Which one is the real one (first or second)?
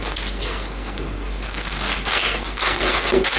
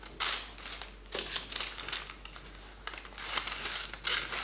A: second